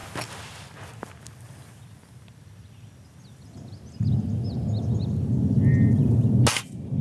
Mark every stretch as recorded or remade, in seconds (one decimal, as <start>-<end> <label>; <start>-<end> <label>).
0.0-7.0 recorded